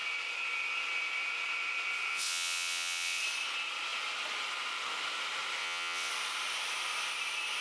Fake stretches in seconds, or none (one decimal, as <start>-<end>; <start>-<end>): 2.1-3.2; 5.6-6.1

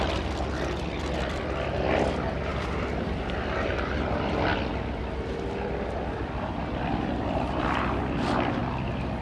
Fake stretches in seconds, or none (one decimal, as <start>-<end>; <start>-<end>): 0.0-4.5; 6.8-8.6

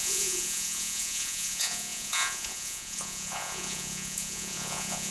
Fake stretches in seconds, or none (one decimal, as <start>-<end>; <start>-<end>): 0.0-5.1